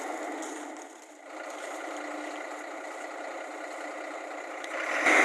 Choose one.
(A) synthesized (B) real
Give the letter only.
B